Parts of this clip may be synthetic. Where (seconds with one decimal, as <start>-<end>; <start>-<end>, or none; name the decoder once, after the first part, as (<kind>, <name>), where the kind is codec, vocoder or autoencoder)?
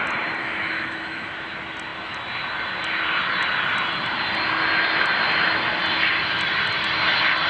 0.4-1.3 (autoencoder, DAC-VAE)